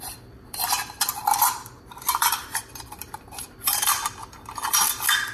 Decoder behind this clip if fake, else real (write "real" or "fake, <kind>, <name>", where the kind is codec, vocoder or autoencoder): fake, vocoder, BigVGAN v2